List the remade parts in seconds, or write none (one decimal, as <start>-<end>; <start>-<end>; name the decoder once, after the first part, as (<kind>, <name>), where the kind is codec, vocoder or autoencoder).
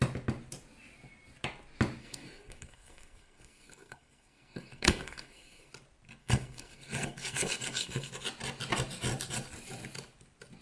2.0-5.7 (codec, SNAC); 6.2-8.1